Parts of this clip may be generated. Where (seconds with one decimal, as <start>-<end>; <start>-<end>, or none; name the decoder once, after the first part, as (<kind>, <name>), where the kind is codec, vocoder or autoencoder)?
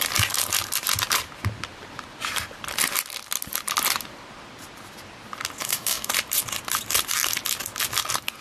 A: 5.6-6.1 (codec, DAC)